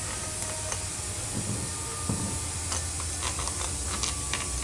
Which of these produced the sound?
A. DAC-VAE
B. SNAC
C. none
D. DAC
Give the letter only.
C